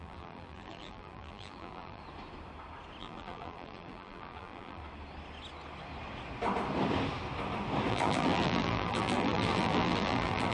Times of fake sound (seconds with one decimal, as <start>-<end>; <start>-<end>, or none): 0.0-2.0; 3.0-4.8; 7.9-10.5